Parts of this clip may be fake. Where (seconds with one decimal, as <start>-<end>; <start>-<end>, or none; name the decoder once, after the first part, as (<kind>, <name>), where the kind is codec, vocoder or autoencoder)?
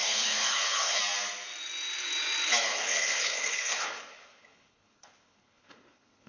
0.0-1.0 (codec, HILCodec); 2.7-6.3